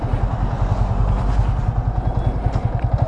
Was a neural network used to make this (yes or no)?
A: no